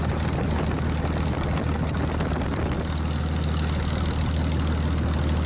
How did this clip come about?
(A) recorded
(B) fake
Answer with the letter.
A